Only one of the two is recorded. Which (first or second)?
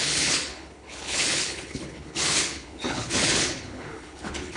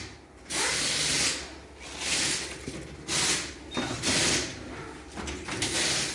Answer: second